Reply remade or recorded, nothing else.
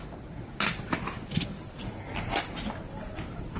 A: recorded